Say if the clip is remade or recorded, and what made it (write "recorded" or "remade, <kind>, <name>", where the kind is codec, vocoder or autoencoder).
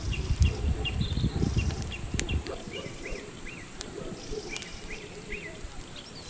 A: remade, vocoder, BigVGAN v2